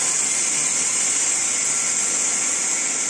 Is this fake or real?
real